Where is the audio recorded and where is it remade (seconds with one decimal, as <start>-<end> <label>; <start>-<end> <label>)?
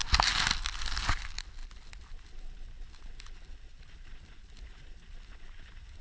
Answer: 0.0-6.0 recorded